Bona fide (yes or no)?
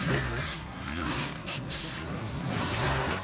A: no